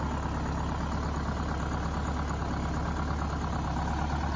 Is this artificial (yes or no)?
no